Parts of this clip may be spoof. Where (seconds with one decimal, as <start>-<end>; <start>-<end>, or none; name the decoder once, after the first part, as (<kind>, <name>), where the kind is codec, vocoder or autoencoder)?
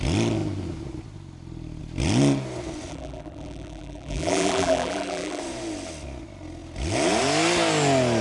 2.9-5.4 (vocoder, BigVGAN v2)